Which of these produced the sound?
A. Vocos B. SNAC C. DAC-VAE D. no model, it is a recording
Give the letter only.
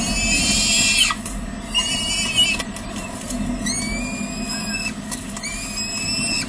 D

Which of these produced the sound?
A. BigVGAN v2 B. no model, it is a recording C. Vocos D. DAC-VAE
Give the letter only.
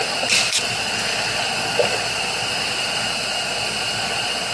B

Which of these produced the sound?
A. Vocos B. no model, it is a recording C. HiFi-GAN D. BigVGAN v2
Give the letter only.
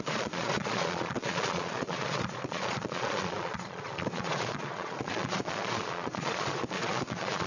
A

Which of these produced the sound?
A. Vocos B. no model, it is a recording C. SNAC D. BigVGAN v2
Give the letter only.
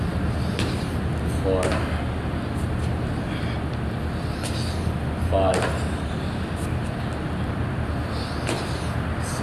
B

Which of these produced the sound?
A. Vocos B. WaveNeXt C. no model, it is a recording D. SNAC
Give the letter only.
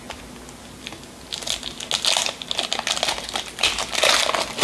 C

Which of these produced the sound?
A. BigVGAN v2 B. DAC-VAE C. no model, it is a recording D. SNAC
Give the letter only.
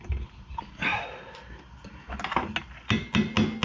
C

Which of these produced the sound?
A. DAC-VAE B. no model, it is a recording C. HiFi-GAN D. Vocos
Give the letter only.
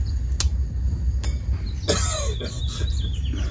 B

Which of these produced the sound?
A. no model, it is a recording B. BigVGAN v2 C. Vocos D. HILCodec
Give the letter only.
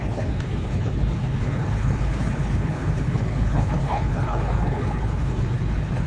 D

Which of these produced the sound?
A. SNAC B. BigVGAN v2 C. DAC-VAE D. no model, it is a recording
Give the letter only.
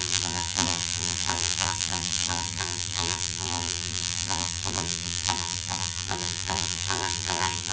B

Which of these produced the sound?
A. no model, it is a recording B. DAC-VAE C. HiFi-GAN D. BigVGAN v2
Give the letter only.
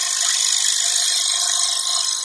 A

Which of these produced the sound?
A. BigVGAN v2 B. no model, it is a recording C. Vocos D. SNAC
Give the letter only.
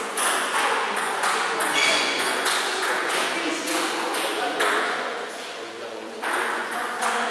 C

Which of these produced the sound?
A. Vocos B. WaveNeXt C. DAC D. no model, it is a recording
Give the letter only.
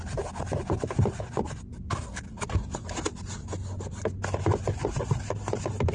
D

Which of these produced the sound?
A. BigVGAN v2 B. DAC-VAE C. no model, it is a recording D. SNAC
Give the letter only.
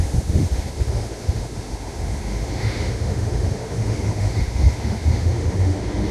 B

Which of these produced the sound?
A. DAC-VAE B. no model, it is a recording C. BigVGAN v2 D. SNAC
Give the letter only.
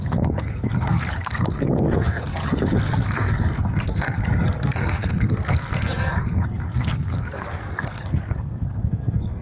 D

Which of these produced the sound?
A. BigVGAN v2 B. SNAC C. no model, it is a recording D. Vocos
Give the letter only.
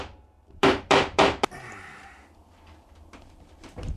A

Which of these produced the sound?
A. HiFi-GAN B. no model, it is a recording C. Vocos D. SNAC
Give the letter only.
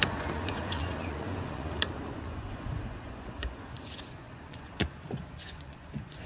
C